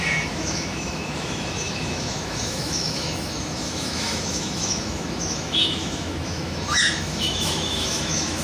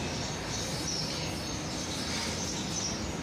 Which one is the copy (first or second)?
first